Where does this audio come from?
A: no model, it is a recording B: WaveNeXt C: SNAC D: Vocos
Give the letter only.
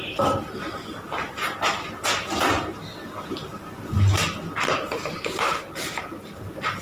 A